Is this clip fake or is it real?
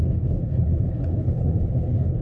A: fake